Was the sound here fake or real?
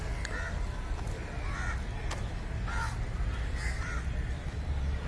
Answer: real